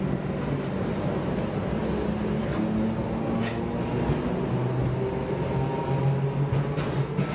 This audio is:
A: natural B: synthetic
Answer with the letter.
A